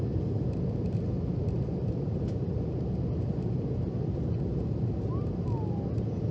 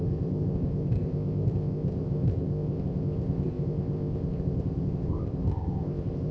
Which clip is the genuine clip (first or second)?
first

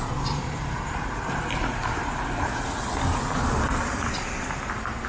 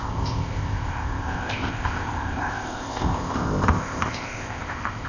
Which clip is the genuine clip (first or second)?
first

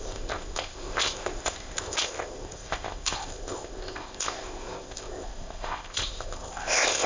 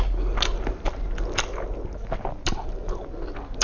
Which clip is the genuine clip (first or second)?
second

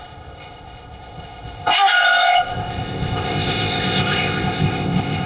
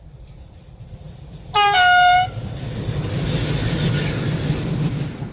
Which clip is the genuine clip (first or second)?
second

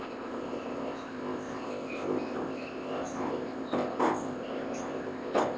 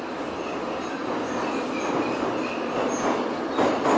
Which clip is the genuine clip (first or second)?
second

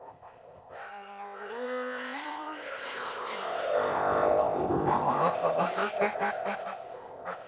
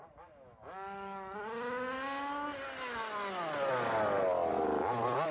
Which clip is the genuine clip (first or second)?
second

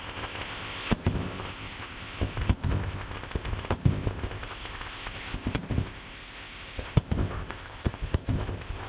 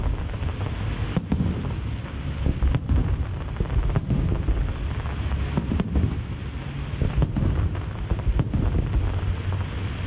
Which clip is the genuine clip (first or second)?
second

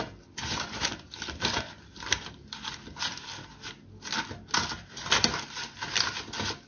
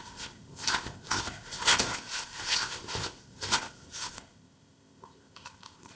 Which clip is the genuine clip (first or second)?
first